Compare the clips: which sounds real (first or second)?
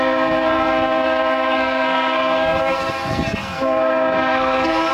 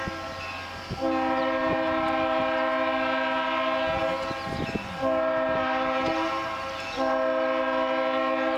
second